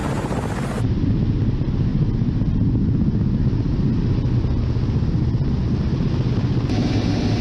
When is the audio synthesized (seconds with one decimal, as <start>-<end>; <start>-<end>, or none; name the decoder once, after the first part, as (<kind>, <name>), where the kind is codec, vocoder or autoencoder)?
none